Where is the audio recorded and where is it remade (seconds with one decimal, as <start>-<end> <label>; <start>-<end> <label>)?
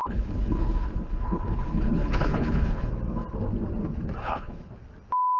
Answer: 0.0-2.9 remade; 2.9-4.2 recorded; 4.2-4.7 remade; 4.7-5.4 recorded